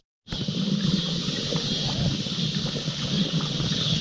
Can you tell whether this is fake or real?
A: real